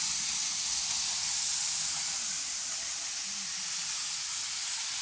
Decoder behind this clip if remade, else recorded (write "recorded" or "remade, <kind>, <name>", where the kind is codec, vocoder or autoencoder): recorded